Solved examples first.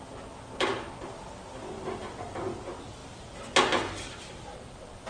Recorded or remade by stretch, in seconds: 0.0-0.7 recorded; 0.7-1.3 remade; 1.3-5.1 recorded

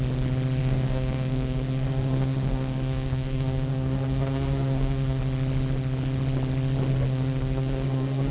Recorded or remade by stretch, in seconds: 0.0-0.6 recorded; 0.6-5.2 remade; 5.2-6.9 recorded; 6.9-8.3 remade

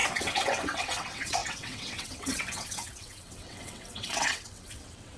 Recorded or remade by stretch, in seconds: 0.0-5.2 remade

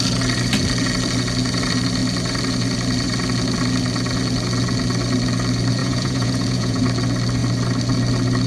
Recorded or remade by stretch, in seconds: 0.0-5.8 recorded; 5.8-6.8 remade; 6.8-8.5 recorded

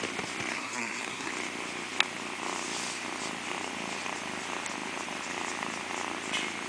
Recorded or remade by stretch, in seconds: 0.0-0.5 recorded; 0.5-1.3 remade; 1.3-6.7 recorded

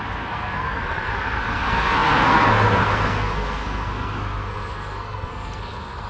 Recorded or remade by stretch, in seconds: 0.0-6.1 remade

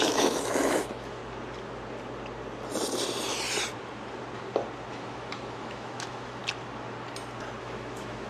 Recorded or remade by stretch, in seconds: 0.0-1.2 remade; 1.2-4.9 recorded; 4.9-6.4 remade; 6.4-7.6 recorded; 7.6-8.3 remade